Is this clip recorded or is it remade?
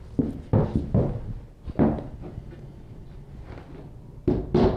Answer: recorded